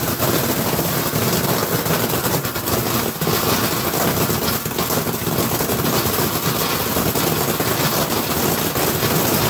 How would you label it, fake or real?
real